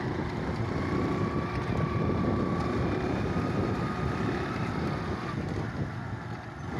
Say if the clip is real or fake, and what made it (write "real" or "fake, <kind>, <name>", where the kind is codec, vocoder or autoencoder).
real